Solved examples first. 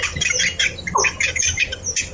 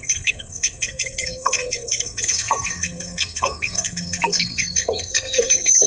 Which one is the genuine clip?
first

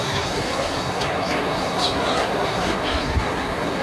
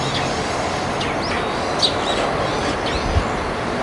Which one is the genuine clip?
second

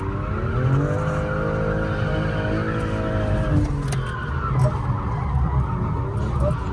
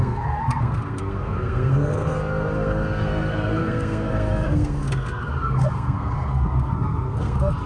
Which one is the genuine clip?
first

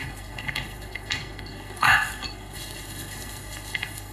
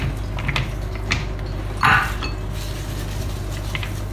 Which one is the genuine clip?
second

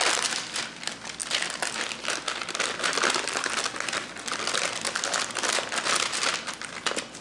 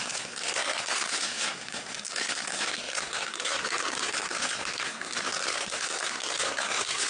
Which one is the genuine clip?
first